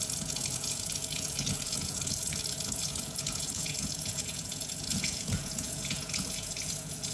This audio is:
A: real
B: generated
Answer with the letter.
B